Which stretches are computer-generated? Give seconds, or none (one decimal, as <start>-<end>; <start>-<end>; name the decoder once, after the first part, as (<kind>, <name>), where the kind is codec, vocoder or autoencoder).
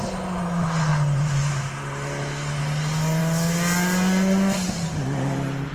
none